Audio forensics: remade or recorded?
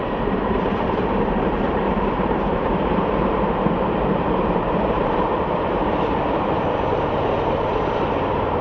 remade